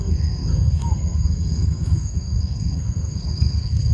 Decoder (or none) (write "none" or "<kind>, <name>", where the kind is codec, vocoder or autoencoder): codec, SNAC